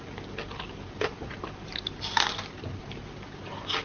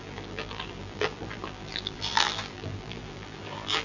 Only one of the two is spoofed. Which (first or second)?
second